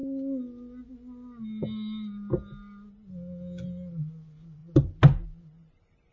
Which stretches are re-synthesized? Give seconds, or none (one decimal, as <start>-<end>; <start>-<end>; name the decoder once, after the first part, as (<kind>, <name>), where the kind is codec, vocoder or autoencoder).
none